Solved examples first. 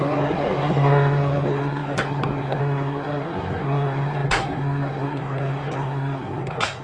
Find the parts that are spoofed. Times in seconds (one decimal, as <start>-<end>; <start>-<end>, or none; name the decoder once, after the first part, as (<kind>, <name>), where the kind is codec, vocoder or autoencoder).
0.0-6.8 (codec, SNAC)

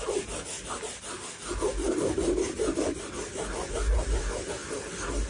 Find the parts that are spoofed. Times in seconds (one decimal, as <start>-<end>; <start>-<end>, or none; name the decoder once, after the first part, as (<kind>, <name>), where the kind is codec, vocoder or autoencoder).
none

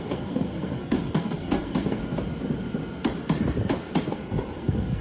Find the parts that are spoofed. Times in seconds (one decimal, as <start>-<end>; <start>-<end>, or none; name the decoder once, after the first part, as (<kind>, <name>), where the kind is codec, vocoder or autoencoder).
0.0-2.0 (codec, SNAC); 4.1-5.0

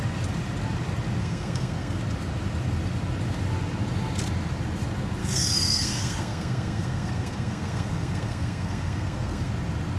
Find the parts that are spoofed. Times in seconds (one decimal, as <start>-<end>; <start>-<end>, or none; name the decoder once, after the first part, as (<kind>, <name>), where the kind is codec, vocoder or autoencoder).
1.2-2.0 (codec, SNAC); 5.2-9.5

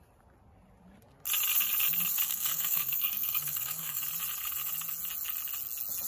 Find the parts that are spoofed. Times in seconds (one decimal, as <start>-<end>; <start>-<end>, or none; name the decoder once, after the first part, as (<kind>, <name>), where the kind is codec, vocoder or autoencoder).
2.2-4.0 (codec, SNAC)

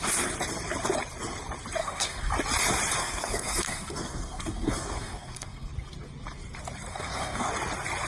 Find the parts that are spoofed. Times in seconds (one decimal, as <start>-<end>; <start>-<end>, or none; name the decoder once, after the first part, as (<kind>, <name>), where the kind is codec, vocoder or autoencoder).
1.8-2.3 (codec, SNAC); 3.0-5.7; 6.9-7.5

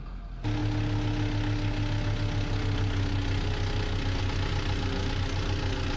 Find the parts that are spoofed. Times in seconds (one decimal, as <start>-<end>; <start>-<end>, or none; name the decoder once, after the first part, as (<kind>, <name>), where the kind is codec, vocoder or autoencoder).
none

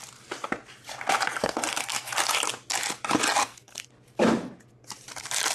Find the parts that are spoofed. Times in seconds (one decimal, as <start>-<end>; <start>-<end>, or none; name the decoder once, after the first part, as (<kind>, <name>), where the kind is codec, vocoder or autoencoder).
1.4-2.1 (codec, SNAC); 3.4-3.9